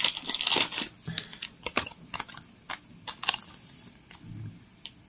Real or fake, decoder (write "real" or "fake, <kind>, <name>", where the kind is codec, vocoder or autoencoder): real